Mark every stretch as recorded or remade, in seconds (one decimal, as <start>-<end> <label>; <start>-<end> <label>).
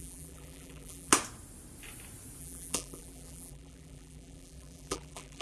0.0-1.1 remade; 1.1-2.4 recorded; 2.4-5.4 remade